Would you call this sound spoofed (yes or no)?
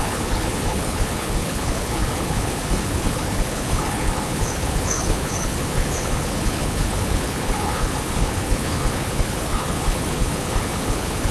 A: yes